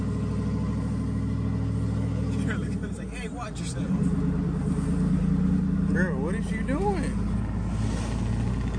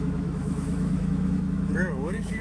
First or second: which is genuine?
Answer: first